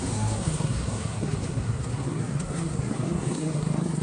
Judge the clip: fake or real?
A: fake